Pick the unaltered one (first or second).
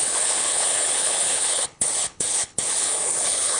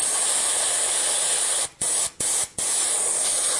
second